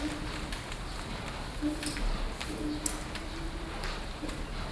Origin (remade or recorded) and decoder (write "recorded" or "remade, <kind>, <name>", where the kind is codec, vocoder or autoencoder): recorded